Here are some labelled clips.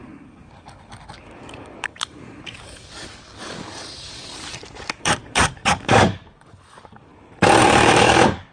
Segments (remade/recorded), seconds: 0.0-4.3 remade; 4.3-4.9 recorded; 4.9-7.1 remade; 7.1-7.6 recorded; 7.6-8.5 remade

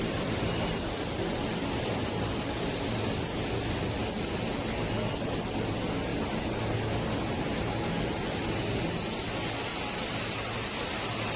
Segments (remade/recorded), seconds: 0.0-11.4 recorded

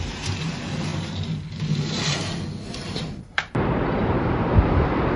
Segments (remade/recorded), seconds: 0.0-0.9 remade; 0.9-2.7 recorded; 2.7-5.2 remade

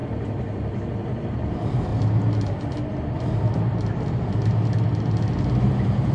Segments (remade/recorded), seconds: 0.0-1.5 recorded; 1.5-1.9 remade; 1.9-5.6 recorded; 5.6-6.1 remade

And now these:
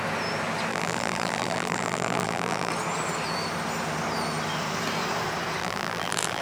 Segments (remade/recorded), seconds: 0.0-0.7 recorded; 0.7-2.7 remade; 2.7-5.6 recorded; 5.6-6.4 remade

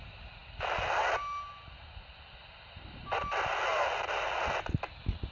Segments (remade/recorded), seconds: 0.0-5.3 recorded

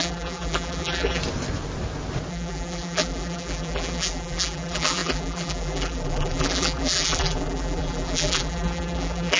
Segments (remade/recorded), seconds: 0.0-1.2 remade; 1.2-2.3 recorded; 2.3-9.4 remade

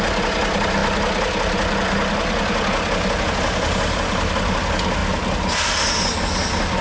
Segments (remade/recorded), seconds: 0.0-6.8 recorded